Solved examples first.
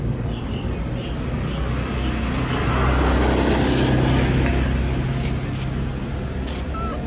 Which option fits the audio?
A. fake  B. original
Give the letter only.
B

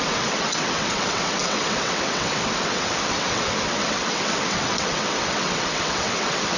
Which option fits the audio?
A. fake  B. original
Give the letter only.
A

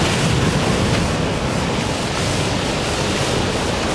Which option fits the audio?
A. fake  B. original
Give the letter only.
B